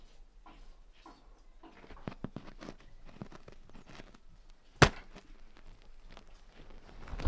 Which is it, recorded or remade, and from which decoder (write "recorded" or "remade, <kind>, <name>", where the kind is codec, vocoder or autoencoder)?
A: recorded